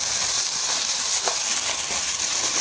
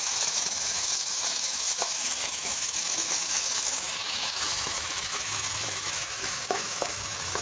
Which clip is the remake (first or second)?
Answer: second